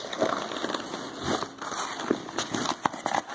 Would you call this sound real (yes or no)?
yes